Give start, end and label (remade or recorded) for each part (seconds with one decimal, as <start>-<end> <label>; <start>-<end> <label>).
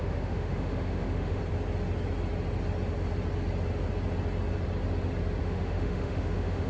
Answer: 0.0-1.4 remade; 1.4-5.4 recorded; 5.4-6.7 remade